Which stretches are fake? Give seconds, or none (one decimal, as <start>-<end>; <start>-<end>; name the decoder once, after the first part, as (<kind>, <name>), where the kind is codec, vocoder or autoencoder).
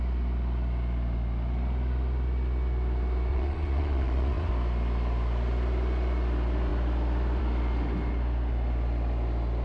3.3-4.5 (vocoder, Vocos)